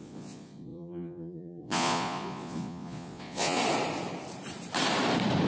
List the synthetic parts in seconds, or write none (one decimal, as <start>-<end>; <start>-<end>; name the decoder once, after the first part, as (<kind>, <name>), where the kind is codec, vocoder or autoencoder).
0.0-3.6 (vocoder, Vocos)

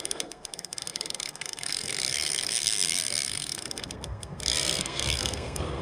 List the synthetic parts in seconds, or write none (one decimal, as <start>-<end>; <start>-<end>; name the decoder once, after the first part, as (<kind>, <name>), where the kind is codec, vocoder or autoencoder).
0.0-5.8 (codec, SNAC)

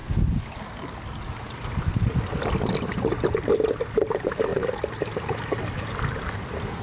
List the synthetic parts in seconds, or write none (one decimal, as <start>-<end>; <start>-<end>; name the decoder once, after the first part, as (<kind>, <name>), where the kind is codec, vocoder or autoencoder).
4.1-4.5 (vocoder, BigVGAN v2); 5.6-6.8

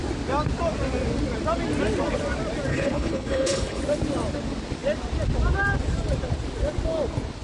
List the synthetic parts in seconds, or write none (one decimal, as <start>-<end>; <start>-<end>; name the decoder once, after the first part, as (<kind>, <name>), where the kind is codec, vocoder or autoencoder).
2.7-3.8 (codec, HILCodec)

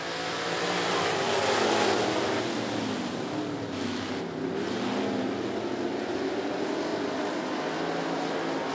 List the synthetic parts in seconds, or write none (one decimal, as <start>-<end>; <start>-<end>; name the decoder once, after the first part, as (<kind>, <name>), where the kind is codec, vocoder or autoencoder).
none